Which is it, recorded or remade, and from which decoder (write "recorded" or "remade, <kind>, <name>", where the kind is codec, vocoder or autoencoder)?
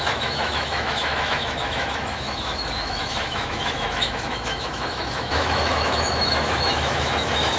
remade, autoencoder, DAC-VAE